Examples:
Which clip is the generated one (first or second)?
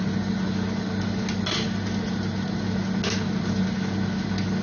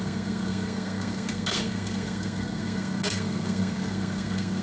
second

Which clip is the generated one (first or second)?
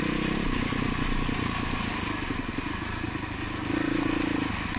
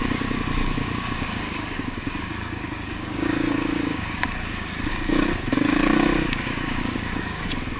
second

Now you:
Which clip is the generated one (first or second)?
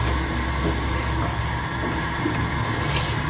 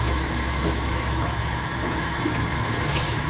second